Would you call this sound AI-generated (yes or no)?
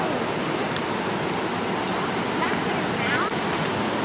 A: no